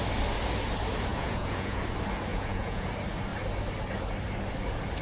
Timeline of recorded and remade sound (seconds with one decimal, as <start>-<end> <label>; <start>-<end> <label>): 0.0-1.1 recorded; 1.1-1.8 remade; 1.8-2.3 recorded; 2.3-2.9 remade; 2.9-5.0 recorded